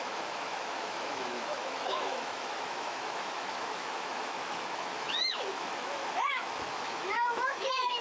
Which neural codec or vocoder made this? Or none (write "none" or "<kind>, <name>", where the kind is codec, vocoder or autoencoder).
autoencoder, DAC-VAE